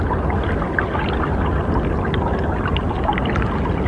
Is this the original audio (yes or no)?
yes